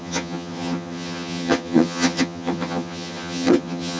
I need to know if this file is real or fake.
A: fake